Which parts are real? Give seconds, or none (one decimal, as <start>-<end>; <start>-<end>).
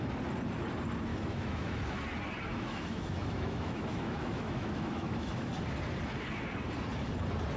0.0-1.1; 1.8-2.5; 5.5-7.6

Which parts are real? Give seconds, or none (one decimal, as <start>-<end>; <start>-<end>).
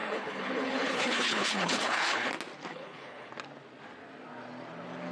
2.3-2.7; 3.3-5.1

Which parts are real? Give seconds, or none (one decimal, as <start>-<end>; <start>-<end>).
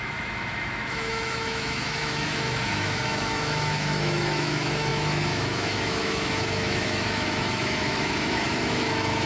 none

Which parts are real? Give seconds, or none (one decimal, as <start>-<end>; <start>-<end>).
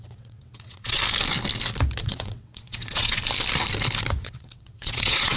1.0-2.0; 3.2-4.2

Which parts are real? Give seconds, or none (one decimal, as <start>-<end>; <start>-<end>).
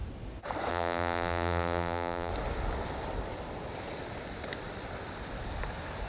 0.0-0.7; 2.3-6.1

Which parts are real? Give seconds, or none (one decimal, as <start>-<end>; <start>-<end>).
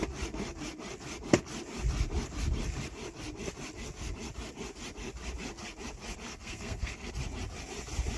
0.0-6.3; 7.1-8.2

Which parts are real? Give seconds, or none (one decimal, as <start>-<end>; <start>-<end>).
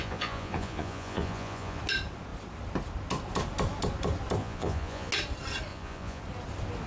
1.8-4.4; 5.1-5.7; 6.2-6.9